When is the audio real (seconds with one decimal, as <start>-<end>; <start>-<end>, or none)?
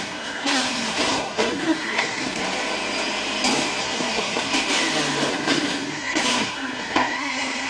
2.4-3.8; 4.5-5.3